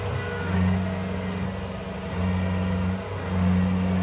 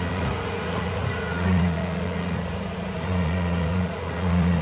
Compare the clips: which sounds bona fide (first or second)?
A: first